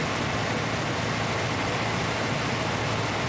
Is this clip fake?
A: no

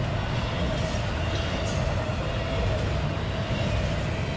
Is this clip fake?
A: no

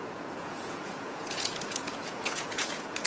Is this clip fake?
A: yes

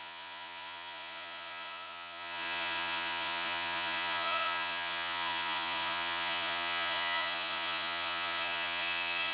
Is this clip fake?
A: yes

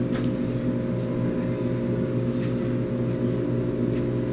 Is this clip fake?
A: no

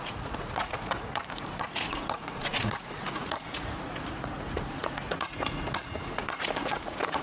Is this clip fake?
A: yes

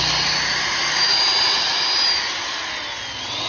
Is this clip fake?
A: no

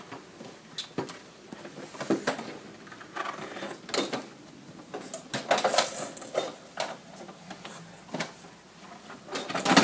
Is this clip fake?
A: no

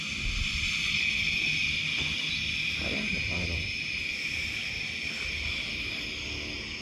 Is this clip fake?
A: no